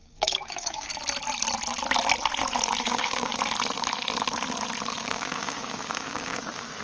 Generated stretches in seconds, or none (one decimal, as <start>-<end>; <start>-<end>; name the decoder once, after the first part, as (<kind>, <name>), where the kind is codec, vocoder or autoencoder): 0.0-0.9 (codec, DAC); 2.8-3.3; 5.0-6.8